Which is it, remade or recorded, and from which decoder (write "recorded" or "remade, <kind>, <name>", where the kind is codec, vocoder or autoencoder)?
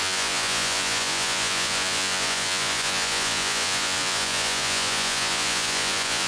remade, vocoder, Vocos